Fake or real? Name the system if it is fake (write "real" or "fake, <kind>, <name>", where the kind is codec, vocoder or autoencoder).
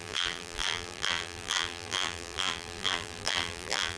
fake, vocoder, BigVGAN v2